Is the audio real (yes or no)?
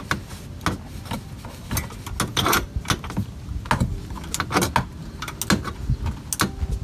yes